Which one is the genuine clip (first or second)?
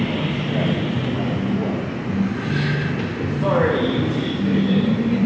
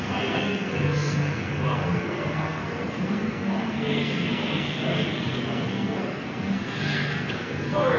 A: first